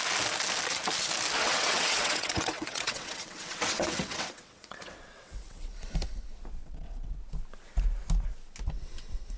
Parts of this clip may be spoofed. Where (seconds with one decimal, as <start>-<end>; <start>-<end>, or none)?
1.4-5.9; 6.6-7.2